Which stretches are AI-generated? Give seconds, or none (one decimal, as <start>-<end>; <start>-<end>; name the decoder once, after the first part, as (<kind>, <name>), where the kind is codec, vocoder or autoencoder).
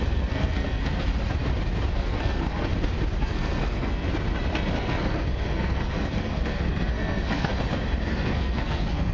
0.0-1.1 (codec, SNAC); 1.9-2.7; 3.2-4.1; 4.8-7.5; 8.1-9.1